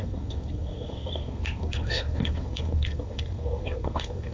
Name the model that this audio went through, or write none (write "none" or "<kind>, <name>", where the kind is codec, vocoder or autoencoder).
codec, SNAC